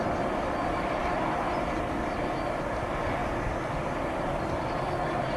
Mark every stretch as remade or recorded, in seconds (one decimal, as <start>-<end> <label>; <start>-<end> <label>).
0.0-3.2 recorded; 3.2-5.0 remade; 5.0-5.4 recorded